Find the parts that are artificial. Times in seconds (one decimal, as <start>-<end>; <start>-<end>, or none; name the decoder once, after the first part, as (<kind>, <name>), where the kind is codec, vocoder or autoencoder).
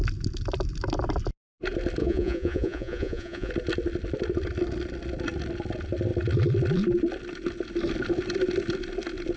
2.0-3.5 (vocoder, Vocos)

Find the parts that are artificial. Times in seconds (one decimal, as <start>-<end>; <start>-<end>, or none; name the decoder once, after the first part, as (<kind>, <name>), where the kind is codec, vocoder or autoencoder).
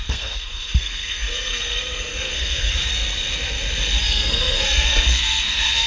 0.0-2.7 (codec, SNAC); 4.0-5.9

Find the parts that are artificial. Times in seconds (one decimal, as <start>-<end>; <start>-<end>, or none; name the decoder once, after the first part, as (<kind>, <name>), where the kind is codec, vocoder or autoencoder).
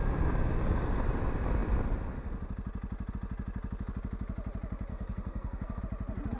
4.9-5.8 (codec, SNAC)